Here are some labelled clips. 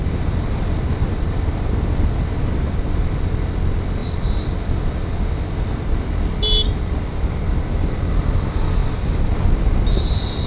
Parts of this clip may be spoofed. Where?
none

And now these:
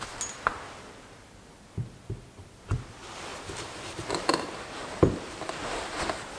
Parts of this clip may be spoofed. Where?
none

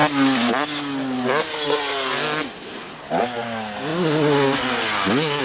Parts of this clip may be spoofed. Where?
none

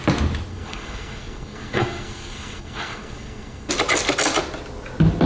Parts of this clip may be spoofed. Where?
0.5-3.7 (codec, SNAC)